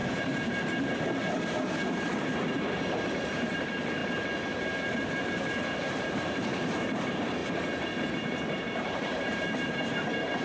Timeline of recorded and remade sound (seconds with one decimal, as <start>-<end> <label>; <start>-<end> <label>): 0.0-4.0 remade; 4.0-4.9 recorded; 4.9-7.4 remade; 7.4-8.1 recorded; 8.1-10.4 remade